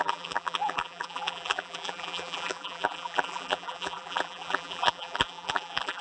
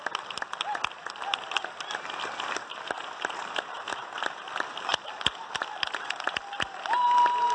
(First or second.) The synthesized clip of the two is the first